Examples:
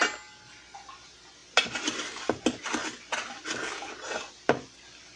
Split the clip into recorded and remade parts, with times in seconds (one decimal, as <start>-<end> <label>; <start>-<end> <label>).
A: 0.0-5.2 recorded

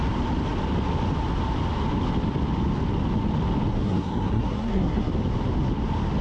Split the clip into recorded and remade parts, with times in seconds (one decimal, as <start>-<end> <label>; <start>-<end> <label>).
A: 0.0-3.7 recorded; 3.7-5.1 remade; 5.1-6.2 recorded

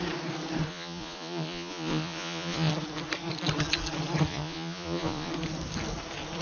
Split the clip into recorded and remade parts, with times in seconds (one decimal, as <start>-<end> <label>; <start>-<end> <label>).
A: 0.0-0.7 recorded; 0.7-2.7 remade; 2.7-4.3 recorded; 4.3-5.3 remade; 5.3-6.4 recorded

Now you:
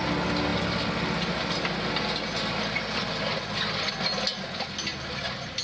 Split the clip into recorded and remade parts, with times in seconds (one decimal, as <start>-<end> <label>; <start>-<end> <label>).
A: 0.0-5.6 recorded

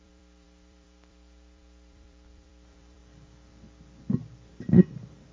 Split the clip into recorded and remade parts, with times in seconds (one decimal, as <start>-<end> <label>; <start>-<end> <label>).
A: 0.0-3.0 remade; 3.0-4.5 recorded; 4.5-5.3 remade

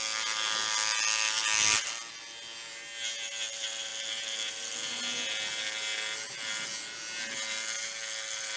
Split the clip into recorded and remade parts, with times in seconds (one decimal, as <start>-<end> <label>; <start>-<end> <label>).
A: 0.0-8.6 recorded

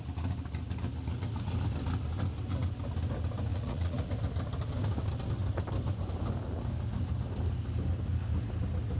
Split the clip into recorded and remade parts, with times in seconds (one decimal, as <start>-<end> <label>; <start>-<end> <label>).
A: 0.0-3.5 recorded; 3.5-4.1 remade; 4.1-9.0 recorded